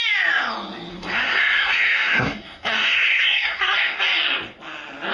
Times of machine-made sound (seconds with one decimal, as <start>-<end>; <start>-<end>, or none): 0.9-4.0